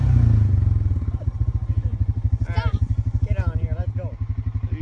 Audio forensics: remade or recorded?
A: recorded